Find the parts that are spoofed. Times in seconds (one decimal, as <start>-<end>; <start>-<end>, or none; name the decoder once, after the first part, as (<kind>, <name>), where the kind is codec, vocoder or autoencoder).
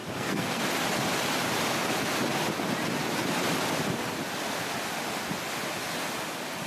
0.0-0.6 (codec, SNAC)